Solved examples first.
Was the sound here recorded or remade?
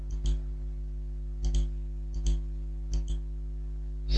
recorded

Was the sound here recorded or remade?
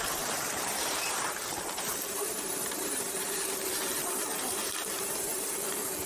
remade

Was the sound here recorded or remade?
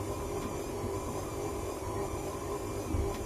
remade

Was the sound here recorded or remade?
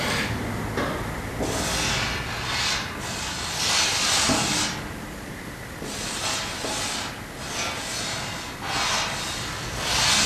recorded